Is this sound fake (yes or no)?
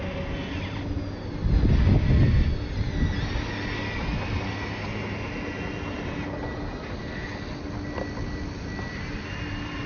no